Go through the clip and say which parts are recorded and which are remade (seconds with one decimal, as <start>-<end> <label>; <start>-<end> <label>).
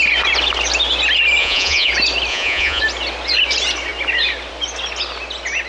0.0-1.4 recorded; 1.4-1.9 remade; 1.9-2.3 recorded; 2.3-2.8 remade; 2.8-5.7 recorded